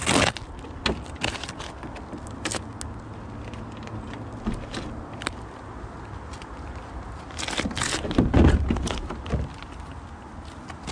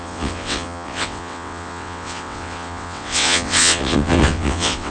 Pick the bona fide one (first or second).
first